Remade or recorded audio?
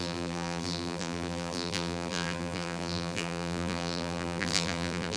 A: remade